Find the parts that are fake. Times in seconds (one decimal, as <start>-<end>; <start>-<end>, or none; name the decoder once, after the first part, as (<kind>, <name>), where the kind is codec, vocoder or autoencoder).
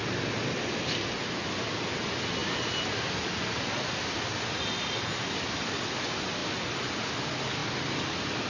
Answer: none